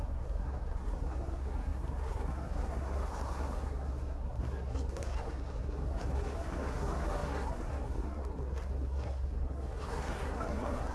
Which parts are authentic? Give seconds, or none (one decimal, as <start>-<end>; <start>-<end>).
none